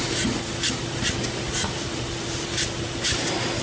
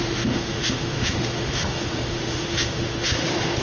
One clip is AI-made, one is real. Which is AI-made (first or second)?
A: second